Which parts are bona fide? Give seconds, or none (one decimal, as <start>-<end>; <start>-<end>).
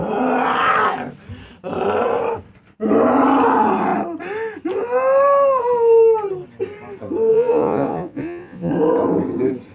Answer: 0.0-7.3; 8.7-9.7